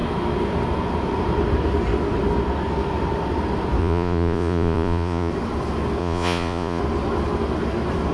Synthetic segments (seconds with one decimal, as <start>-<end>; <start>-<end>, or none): 3.8-5.3; 6.0-6.8

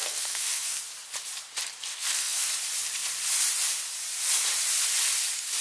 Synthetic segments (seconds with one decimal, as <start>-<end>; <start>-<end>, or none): 0.0-0.8; 1.9-2.5